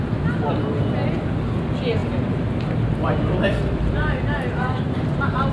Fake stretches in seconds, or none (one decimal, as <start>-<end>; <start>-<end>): 2.0-5.5